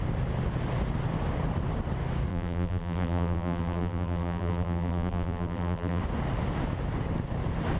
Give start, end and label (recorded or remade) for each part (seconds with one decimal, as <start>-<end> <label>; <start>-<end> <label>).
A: 0.0-2.3 recorded; 2.3-6.0 remade; 6.0-7.8 recorded